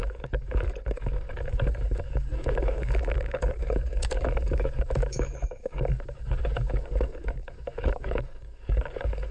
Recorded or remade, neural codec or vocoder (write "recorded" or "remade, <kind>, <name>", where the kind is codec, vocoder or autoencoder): remade, codec, DAC